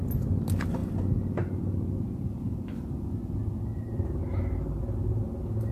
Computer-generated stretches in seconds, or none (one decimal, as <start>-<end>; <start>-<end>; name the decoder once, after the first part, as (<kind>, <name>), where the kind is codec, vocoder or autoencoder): none